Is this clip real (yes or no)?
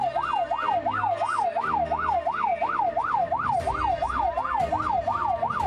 yes